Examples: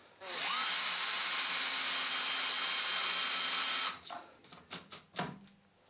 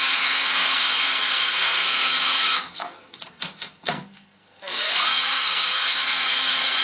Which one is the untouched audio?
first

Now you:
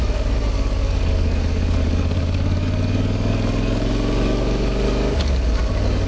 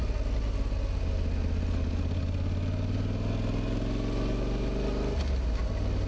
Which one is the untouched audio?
second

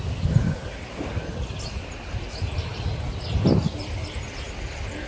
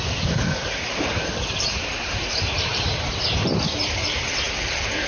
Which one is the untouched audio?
first